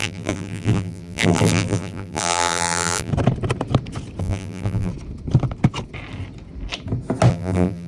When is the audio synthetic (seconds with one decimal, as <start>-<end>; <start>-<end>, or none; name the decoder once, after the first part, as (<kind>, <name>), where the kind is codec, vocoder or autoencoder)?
0.0-3.1 (vocoder, BigVGAN v2); 4.2-4.9; 7.3-7.9